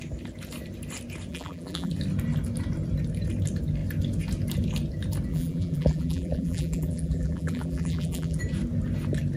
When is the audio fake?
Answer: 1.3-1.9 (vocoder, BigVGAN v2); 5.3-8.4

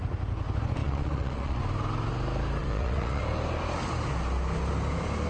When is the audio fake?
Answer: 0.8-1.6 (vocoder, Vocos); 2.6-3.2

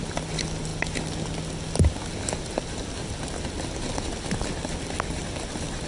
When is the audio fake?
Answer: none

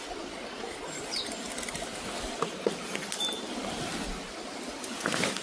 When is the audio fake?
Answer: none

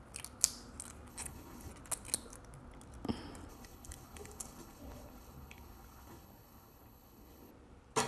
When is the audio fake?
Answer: 1.1-1.7 (codec, HILCodec); 3.5-7.5

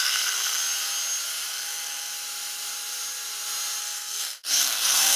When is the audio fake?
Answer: 0.0-0.6 (codec, SNAC); 1.5-2.1; 3.8-5.2